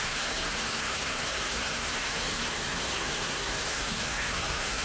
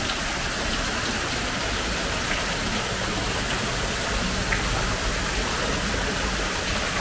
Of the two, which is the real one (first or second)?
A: second